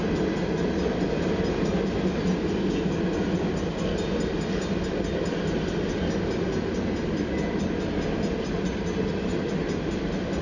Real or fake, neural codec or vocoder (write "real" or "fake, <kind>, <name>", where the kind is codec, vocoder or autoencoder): real